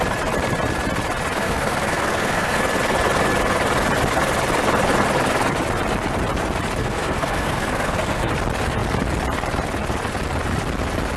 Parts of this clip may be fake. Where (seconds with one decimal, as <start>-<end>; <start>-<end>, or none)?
1.4-2.6; 6.8-8.3